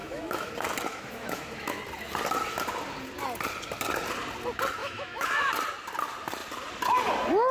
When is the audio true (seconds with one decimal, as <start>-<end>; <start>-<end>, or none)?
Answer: 0.5-0.9; 1.8-4.8; 5.5-7.5